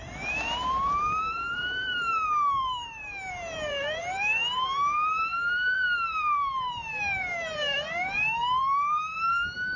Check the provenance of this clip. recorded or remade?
remade